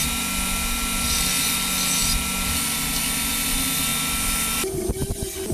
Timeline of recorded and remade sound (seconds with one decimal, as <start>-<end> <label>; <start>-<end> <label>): 0.0-5.5 recorded